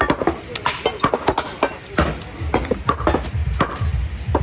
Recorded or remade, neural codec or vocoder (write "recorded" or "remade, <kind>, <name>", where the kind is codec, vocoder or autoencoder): recorded